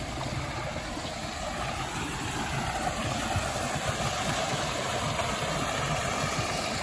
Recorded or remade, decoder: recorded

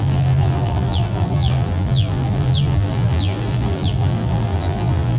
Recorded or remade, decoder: remade, vocoder, BigVGAN v2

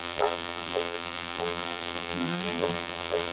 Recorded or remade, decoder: remade, vocoder, BigVGAN v2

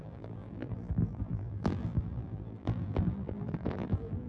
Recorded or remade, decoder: remade, vocoder, BigVGAN v2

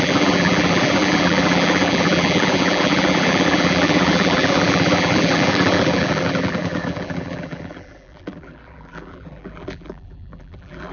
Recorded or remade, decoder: remade, vocoder, BigVGAN v2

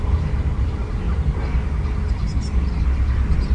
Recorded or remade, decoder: recorded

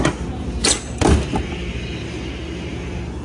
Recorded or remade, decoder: recorded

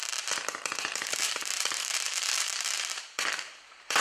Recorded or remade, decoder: remade, vocoder, BigVGAN v2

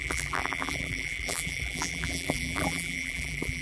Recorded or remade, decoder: remade, vocoder, BigVGAN v2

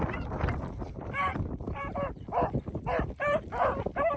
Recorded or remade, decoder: remade, vocoder, BigVGAN v2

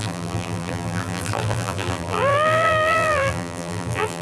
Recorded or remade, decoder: remade, vocoder, BigVGAN v2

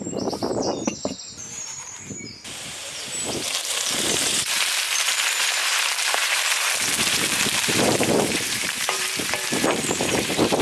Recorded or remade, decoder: remade, vocoder, BigVGAN v2